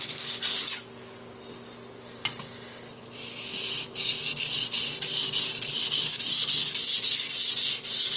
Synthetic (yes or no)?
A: no